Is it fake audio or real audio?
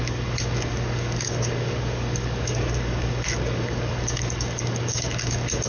fake